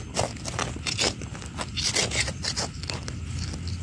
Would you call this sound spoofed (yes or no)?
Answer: no